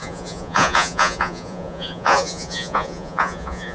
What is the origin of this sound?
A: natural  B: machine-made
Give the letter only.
B